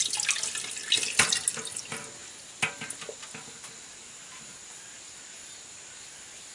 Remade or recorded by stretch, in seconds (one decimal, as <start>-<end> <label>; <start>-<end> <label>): 0.0-6.5 recorded

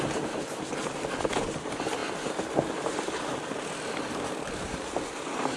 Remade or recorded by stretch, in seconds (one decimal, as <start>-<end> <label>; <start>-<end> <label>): 0.0-5.6 recorded

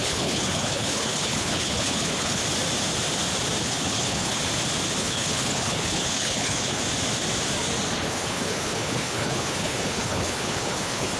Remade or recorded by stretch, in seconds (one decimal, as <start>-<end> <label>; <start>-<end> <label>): 0.0-2.4 remade; 2.4-3.6 recorded; 3.6-4.4 remade; 4.4-5.0 recorded; 5.0-6.8 remade; 6.8-8.1 recorded; 8.1-11.2 remade

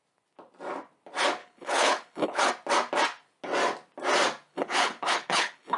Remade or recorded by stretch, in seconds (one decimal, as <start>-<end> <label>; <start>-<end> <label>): 0.0-1.4 recorded; 1.4-2.5 remade; 2.5-4.5 recorded; 4.5-5.8 remade

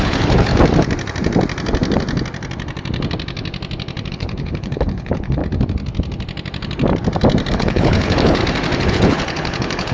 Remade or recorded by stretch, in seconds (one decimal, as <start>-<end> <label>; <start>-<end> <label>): 0.0-0.5 remade; 0.5-4.1 recorded; 4.1-5.4 remade; 5.4-7.5 recorded; 7.5-8.4 remade; 8.4-8.9 recorded; 8.9-9.9 remade